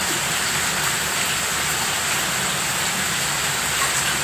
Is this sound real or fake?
real